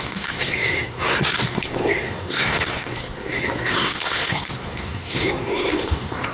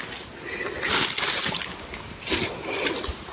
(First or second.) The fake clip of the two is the first